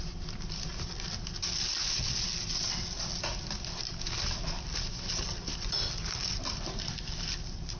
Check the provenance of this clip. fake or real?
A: real